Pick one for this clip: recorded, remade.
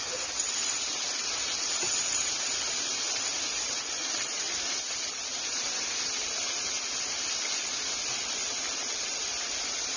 recorded